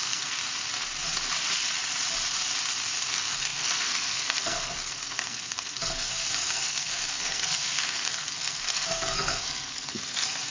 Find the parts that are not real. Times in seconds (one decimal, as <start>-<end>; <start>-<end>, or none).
0.0-0.4; 3.1-10.5